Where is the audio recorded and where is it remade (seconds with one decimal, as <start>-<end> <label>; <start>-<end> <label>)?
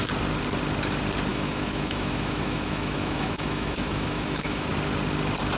0.0-1.3 recorded; 1.3-4.7 remade; 4.7-5.6 recorded